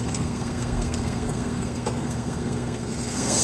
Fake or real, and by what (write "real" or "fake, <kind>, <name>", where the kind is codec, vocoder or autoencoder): fake, codec, SNAC